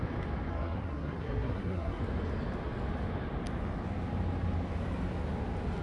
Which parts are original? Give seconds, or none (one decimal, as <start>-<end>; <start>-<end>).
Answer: 0.0-0.5; 2.0-5.8